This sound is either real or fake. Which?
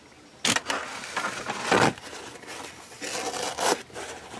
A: real